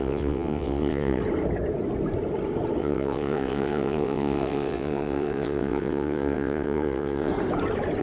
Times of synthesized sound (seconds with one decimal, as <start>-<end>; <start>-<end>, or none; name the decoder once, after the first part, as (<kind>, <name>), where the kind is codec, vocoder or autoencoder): 0.0-1.2 (vocoder, WaveNeXt); 2.8-7.3